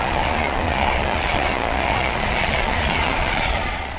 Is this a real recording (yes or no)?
no